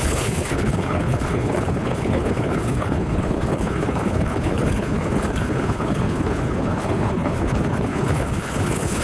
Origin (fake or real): fake